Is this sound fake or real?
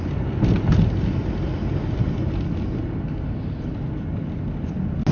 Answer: real